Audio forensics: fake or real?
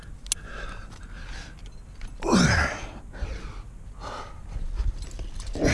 real